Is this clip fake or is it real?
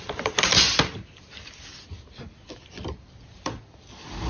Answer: real